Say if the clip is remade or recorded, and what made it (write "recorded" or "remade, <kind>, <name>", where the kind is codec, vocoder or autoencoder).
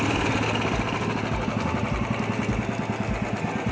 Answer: recorded